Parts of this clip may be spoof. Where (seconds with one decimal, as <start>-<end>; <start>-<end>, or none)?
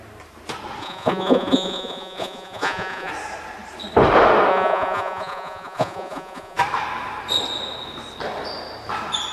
0.8-3.1; 4.5-6.6